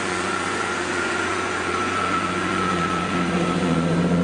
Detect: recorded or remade remade